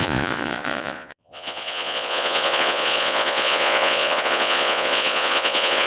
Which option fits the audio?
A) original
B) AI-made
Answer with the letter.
B